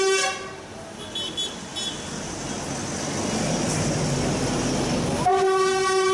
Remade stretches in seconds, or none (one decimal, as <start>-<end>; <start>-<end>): none